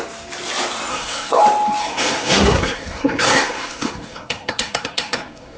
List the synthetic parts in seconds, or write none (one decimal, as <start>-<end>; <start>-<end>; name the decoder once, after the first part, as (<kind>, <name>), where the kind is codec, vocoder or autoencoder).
0.9-1.4 (codec, SNAC); 1.8-5.6